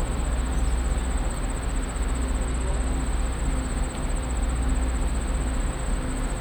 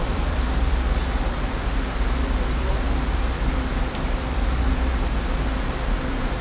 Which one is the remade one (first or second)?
second